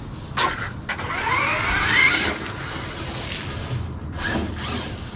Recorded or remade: recorded